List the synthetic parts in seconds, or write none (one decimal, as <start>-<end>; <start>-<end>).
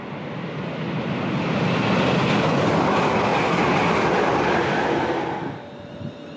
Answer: none